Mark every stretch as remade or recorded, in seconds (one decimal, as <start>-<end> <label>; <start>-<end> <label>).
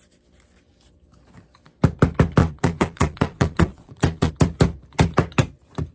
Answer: 0.0-2.4 recorded; 2.4-4.3 remade; 4.3-5.9 recorded